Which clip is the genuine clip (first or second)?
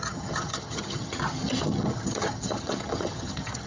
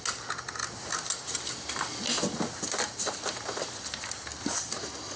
second